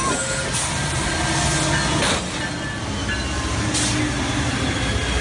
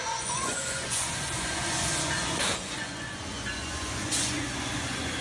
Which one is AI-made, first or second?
second